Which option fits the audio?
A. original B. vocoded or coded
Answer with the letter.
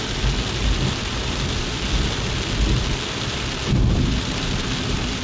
A